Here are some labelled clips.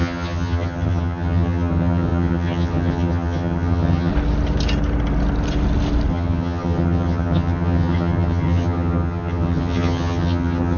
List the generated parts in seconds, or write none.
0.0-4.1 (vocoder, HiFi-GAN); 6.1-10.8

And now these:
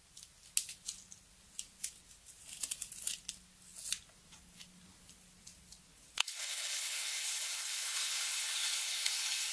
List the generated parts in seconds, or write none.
6.2-9.5 (codec, HILCodec)

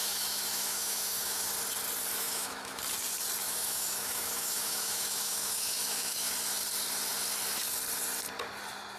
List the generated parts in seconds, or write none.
0.0-1.5 (autoencoder, DAC-VAE); 2.1-2.8; 3.4-6.3

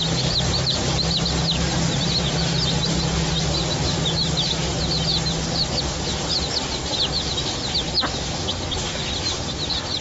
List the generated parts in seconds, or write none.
none

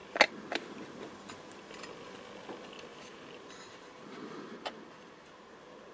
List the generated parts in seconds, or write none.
2.9-5.3 (vocoder, BigVGAN v2)

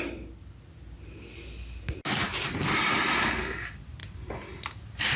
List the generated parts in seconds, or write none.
none

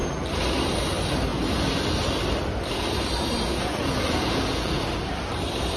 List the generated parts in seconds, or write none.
3.5-4.8 (vocoder, Vocos)